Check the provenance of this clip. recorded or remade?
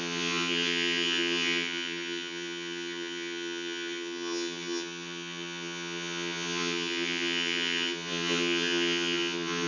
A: remade